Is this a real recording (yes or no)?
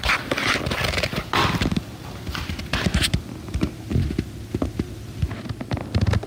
yes